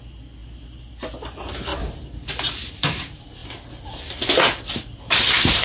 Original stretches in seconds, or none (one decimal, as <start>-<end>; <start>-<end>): 0.0-5.6